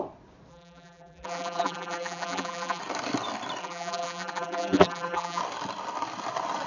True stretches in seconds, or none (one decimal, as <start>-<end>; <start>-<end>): 0.0-0.5; 2.8-3.6; 5.4-6.7